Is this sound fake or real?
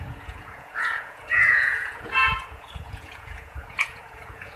fake